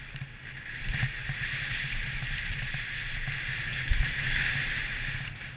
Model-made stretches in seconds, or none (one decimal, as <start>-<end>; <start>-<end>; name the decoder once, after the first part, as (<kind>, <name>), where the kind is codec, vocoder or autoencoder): 3.7-4.4 (autoencoder, DAC-VAE)